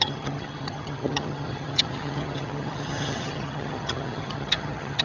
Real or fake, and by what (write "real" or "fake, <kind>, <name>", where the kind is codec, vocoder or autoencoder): fake, vocoder, HiFi-GAN